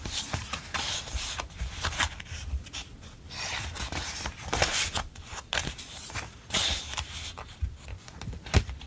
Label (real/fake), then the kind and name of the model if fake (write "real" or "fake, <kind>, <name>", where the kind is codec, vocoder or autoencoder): fake, vocoder, BigVGAN v2